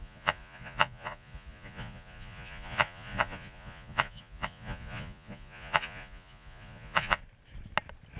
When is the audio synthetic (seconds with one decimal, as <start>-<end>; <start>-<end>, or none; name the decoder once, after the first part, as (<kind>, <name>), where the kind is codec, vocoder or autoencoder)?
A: 0.0-7.2 (vocoder, Vocos)